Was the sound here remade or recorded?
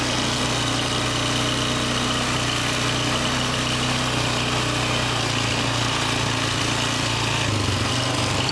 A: recorded